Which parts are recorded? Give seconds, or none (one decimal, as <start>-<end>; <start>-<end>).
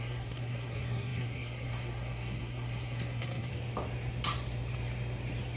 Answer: 3.5-5.6